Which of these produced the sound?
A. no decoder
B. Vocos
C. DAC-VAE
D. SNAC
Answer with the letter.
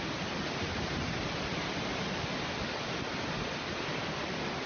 A